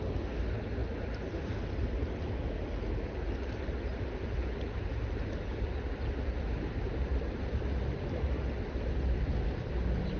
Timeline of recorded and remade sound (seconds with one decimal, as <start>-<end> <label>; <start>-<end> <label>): 0.0-10.2 recorded